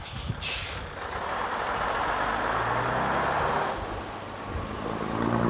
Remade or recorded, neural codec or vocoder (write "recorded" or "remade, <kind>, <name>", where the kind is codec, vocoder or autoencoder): recorded